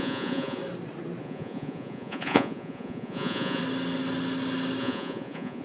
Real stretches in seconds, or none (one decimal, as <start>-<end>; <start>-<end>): 0.6-1.2; 3.6-4.8